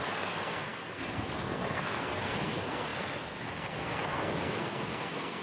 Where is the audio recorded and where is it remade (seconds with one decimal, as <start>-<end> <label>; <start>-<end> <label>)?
0.0-5.4 remade

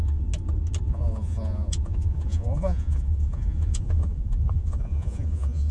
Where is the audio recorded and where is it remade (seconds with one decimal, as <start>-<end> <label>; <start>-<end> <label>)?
0.0-0.8 recorded; 0.8-5.7 remade

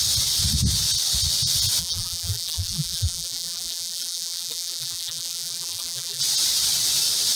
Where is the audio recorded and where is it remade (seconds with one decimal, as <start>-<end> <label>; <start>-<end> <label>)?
0.0-1.8 recorded; 1.8-6.2 remade; 6.2-7.4 recorded

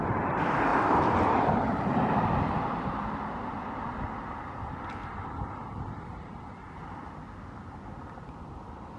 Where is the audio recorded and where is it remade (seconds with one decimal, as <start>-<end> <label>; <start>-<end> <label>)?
0.0-0.7 recorded; 0.7-2.8 remade; 2.8-9.0 recorded

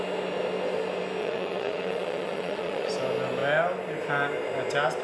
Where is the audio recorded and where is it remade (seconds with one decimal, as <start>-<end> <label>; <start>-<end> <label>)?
0.0-1.2 recorded; 1.2-2.9 remade; 2.9-5.0 recorded